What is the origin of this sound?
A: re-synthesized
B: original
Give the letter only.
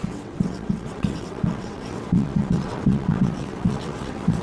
A